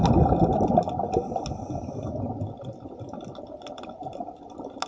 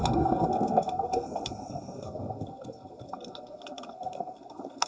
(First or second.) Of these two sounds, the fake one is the second